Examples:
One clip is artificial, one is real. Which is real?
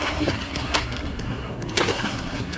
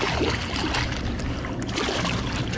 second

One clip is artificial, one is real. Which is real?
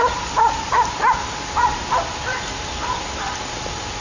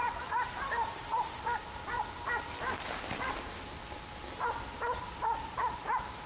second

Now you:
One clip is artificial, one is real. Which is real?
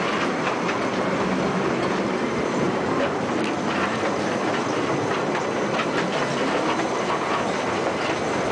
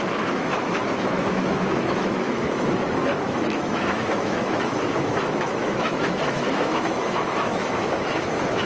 first